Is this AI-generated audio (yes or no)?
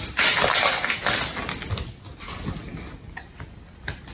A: no